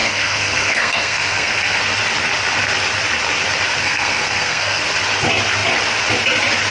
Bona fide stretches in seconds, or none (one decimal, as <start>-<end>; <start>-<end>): 1.8-3.8; 4.8-6.7